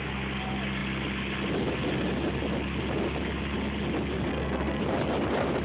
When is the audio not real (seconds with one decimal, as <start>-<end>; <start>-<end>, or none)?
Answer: 4.3-4.8